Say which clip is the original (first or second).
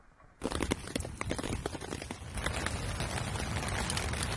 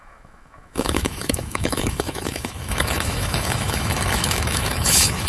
first